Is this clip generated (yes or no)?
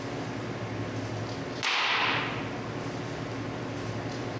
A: no